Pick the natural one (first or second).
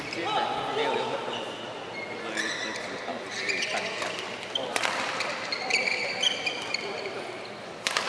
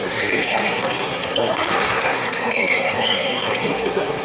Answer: first